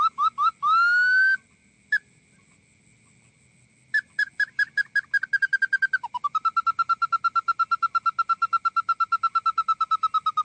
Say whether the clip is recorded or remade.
recorded